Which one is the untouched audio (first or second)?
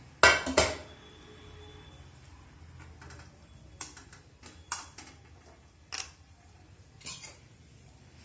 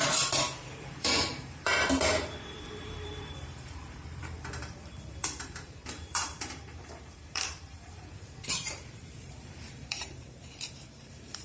first